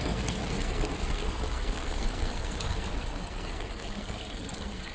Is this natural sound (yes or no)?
no